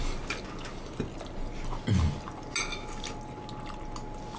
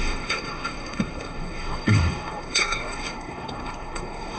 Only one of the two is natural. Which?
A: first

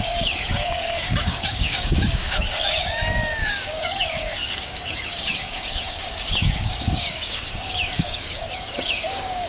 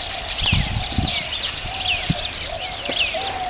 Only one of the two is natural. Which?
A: second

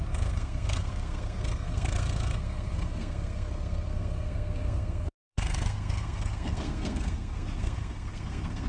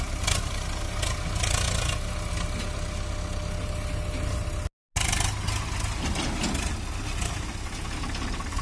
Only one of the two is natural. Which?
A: second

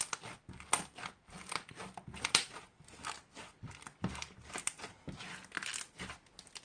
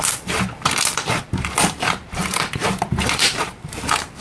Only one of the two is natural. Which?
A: first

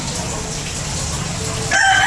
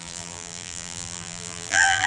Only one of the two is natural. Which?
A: first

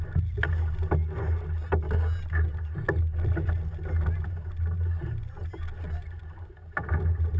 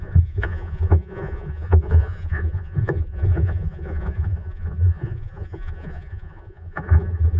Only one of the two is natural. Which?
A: first